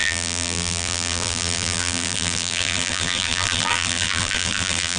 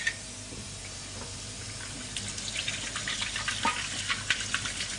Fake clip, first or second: first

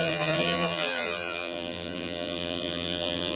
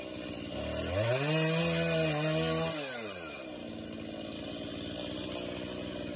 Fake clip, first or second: first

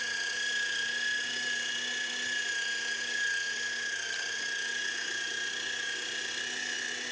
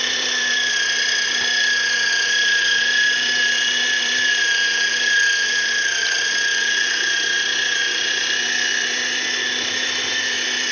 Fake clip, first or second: second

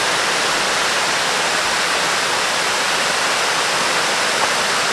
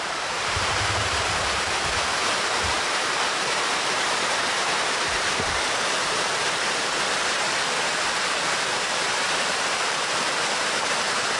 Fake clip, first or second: second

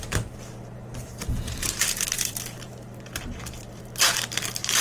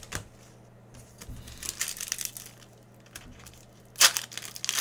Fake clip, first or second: first